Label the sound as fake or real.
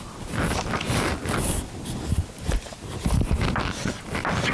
real